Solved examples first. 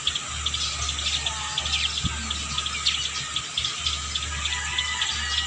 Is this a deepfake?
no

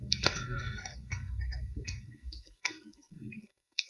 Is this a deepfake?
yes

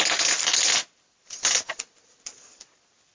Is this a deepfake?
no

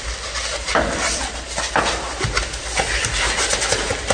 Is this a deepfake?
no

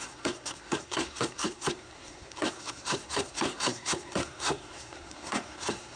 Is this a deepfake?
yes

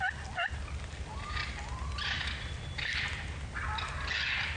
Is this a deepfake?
no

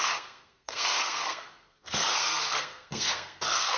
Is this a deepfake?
yes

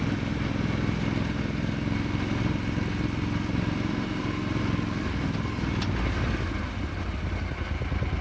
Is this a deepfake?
no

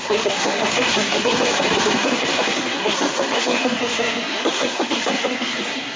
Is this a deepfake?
yes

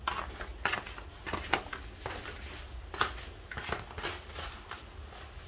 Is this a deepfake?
no